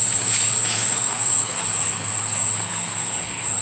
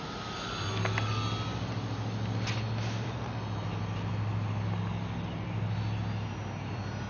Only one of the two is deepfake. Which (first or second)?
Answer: first